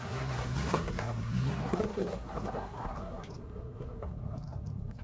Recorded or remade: remade